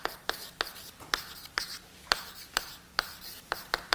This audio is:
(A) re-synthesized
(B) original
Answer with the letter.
B